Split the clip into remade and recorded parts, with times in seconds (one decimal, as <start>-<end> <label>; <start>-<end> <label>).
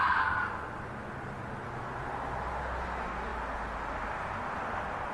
0.0-5.1 recorded